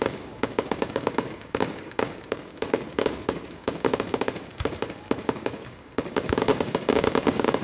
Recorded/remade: remade